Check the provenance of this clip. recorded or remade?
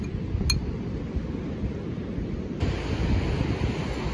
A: recorded